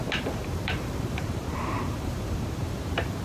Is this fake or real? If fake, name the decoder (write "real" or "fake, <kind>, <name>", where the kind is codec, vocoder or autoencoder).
fake, vocoder, BigVGAN v2